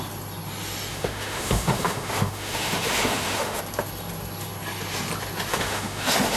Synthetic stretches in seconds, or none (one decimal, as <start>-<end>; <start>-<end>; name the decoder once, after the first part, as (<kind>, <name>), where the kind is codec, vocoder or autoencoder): 0.9-3.6 (autoencoder, DAC-VAE); 5.5-6.4